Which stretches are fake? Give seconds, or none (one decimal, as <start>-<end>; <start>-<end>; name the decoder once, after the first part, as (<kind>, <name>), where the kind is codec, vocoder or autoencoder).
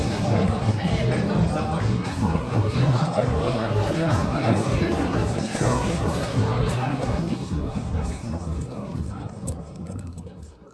0.0-0.9 (codec, SNAC); 1.8-10.7